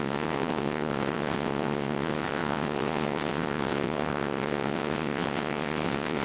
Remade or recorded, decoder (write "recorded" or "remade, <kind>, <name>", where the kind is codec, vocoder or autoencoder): remade, vocoder, WaveNeXt